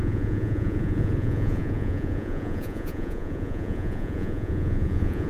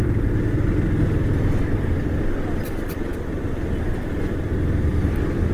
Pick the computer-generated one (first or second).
first